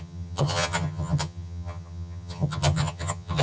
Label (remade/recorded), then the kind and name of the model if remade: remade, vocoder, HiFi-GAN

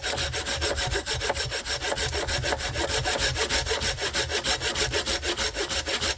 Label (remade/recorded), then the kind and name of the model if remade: recorded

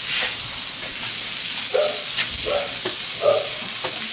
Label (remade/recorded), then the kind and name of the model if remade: recorded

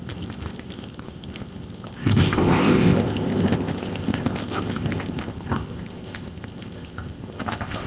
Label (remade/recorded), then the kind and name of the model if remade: remade, codec, ZipCodec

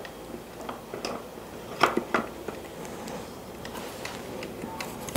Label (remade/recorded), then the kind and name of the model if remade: recorded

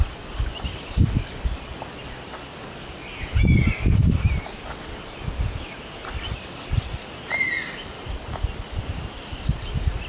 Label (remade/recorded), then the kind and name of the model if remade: recorded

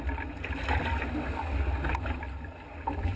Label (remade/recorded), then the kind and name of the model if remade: recorded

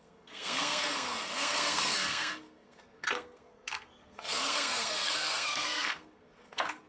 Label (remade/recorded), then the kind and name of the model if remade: remade, codec, SNAC